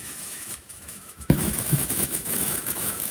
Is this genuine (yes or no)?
no